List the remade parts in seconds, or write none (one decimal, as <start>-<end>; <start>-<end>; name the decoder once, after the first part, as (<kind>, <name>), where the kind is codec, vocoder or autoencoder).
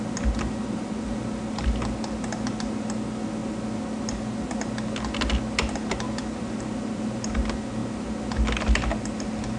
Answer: none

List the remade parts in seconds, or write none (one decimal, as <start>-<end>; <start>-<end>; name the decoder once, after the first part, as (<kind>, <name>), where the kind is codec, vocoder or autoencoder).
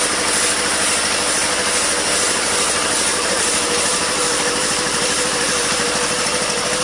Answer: 3.1-6.8 (vocoder, BigVGAN v2)